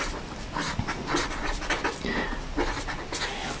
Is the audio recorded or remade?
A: recorded